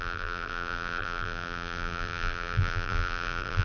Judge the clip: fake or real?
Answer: fake